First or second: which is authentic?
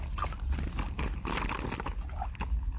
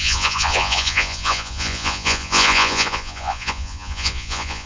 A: first